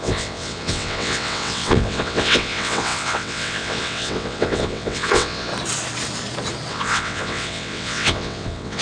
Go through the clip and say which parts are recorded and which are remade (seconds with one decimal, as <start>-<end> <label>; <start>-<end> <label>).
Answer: 0.0-5.5 remade; 5.5-6.7 recorded; 6.7-8.8 remade